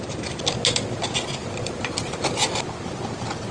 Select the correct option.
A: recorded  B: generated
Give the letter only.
A